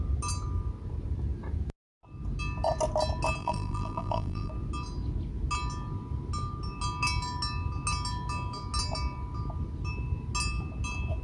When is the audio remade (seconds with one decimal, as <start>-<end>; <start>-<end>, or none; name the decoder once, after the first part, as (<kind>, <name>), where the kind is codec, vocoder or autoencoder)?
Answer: 3.4-4.5 (vocoder, BigVGAN v2)